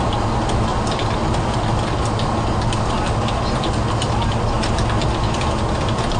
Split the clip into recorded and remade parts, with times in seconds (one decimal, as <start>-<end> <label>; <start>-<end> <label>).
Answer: 0.0-6.2 recorded